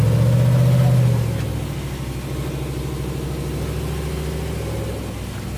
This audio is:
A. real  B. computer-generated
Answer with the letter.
A